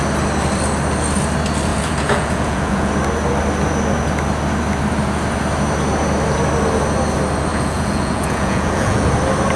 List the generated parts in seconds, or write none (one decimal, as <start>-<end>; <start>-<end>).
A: 1.7-2.9; 7.5-9.1